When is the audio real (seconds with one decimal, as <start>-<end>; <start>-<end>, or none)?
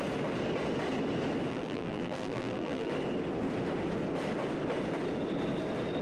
0.0-1.5; 2.9-6.0